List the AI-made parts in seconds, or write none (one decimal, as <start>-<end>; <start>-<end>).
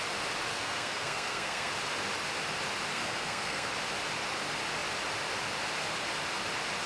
0.5-1.7; 2.9-3.7